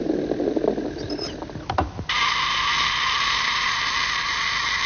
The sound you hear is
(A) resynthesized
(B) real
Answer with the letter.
B